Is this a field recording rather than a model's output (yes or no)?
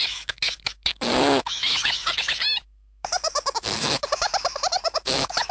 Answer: no